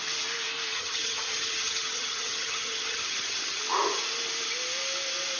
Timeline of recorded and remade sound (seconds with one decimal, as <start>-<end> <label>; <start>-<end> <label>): 0.0-0.7 recorded; 0.7-3.6 remade; 3.6-5.4 recorded